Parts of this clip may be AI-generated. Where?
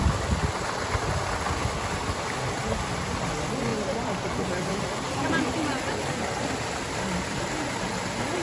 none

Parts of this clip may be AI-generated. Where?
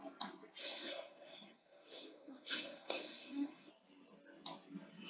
0.6-3.7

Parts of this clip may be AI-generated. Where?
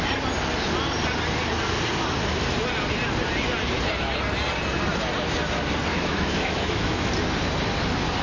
5.9-7.1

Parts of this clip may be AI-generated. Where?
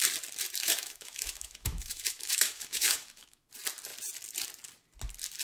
0.6-3.5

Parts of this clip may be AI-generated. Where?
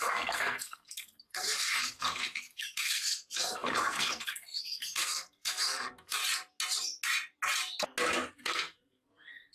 0.0-6.2; 8.3-9.5